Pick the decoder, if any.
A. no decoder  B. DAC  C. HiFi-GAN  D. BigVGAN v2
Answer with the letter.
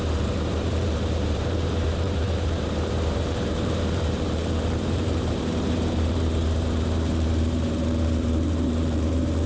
D